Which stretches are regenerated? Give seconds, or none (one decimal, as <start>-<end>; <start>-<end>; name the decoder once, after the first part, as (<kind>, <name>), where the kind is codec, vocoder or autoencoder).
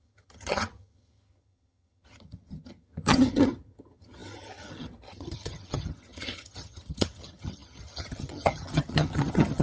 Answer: 0.0-9.6 (vocoder, HiFi-GAN)